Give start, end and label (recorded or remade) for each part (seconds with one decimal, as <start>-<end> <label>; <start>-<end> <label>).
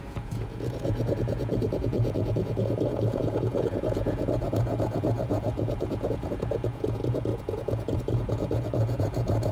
0.0-9.5 remade